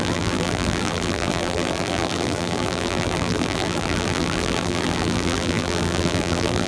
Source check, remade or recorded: remade